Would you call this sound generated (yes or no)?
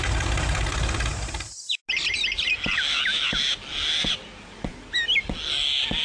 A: no